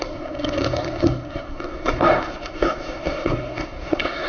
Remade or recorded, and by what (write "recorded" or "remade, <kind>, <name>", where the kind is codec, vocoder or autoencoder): remade, codec, SNAC